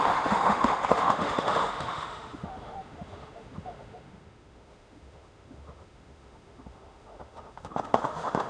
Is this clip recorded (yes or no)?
no